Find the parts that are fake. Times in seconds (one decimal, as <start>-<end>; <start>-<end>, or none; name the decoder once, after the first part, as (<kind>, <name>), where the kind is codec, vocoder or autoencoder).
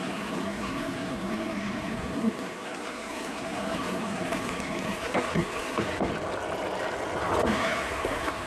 0.0-6.1 (codec, SNAC); 7.4-8.5